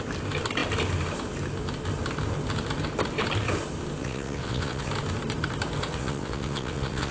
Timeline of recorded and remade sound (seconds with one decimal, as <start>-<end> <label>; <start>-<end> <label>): 0.0-4.0 recorded; 4.0-4.9 remade; 4.9-5.9 recorded; 5.9-7.1 remade